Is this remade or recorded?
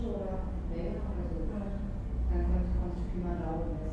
recorded